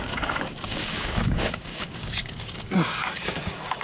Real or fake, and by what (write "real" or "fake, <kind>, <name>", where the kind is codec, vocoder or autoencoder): fake, codec, DAC